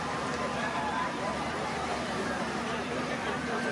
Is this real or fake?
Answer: fake